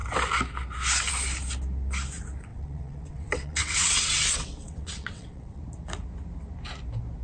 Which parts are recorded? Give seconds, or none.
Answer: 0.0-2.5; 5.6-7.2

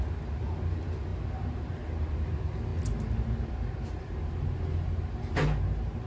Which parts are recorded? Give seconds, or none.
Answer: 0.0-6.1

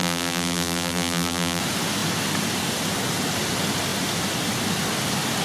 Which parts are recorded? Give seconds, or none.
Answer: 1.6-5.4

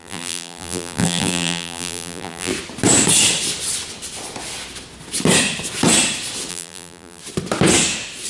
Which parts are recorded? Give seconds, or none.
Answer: 2.5-6.5; 7.2-8.3

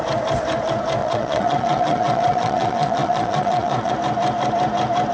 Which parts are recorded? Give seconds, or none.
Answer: 0.0-1.0; 3.9-5.1

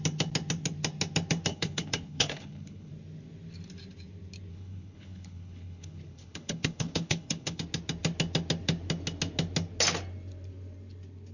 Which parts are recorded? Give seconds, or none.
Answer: 0.0-1.5; 2.9-4.5; 7.6-11.3

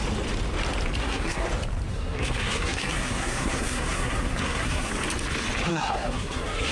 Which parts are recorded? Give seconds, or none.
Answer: 0.0-1.0; 1.5-1.9; 4.9-5.7